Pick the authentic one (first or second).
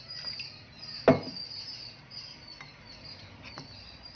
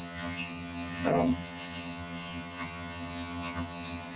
first